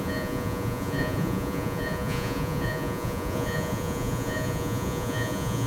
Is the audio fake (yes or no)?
yes